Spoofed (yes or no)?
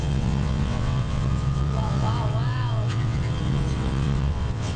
yes